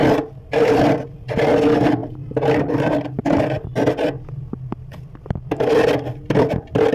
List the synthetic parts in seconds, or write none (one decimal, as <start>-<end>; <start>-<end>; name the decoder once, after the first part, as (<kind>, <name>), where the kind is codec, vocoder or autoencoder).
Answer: 0.0-3.7 (vocoder, BigVGAN v2); 4.7-6.9